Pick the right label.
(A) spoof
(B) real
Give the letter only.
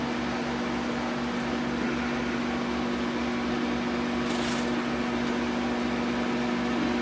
B